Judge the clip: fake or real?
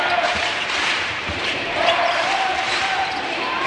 fake